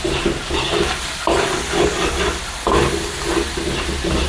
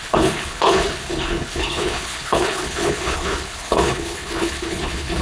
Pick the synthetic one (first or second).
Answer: second